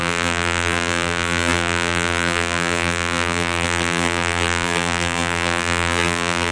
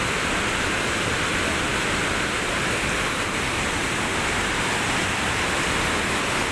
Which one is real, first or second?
second